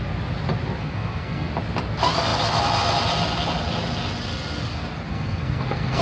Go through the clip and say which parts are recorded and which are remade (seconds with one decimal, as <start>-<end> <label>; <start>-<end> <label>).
0.0-0.8 recorded; 0.8-1.5 remade; 1.5-5.1 recorded; 5.1-6.0 remade